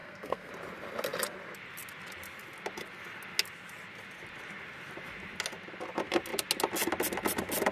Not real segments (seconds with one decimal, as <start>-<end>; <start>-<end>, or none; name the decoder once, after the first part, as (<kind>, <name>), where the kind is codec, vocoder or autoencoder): 0.0-0.5 (codec, SNAC)